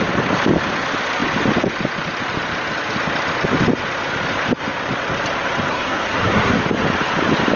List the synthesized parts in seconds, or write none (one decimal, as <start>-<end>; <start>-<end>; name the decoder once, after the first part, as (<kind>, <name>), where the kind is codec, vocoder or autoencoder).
5.7-6.6 (codec, SNAC)